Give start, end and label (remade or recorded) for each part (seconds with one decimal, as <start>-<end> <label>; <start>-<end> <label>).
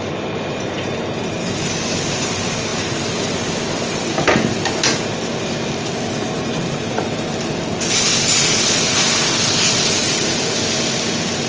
0.0-11.5 recorded